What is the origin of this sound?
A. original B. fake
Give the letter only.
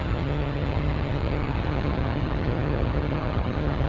B